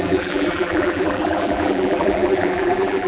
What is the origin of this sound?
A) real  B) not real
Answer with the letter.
B